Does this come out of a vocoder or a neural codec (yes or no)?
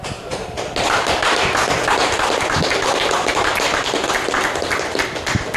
no